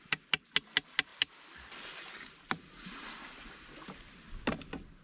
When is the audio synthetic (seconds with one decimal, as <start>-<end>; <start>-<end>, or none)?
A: none